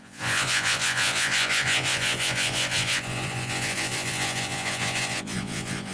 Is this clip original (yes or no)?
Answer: no